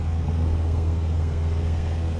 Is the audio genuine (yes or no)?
no